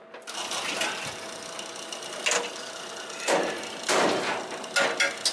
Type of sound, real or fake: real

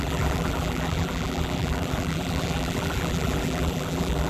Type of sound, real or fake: fake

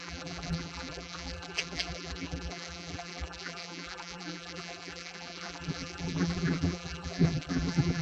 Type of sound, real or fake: fake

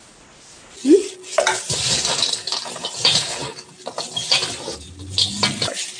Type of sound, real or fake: real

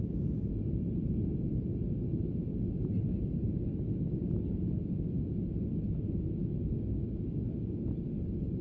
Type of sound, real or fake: real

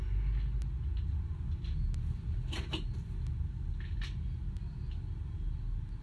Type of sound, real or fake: real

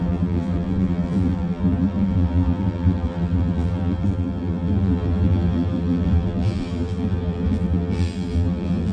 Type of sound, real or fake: fake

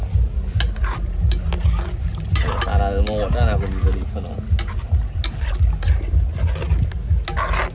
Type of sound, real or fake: real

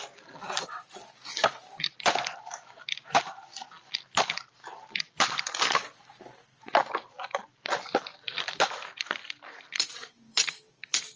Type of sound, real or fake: fake